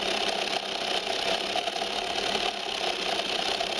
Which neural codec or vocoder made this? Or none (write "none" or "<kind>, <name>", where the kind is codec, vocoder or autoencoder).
none